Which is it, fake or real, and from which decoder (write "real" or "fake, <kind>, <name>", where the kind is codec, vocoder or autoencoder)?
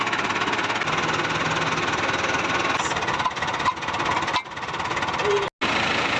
real